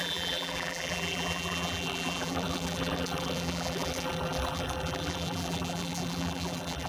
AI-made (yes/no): yes